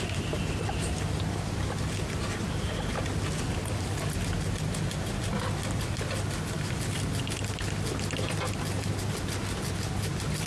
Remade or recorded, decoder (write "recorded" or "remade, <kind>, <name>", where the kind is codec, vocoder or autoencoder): recorded